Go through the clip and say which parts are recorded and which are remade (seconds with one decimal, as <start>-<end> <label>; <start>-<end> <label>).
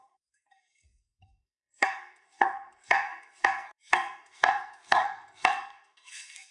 0.0-6.5 remade